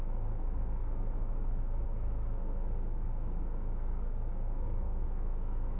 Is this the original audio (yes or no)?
no